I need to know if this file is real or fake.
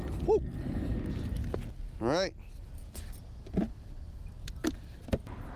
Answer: real